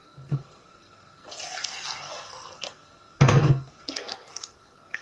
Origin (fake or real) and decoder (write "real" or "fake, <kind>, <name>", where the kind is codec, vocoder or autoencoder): fake, codec, SNAC